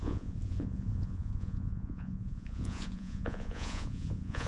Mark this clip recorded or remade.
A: remade